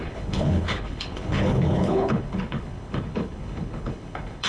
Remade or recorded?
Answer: remade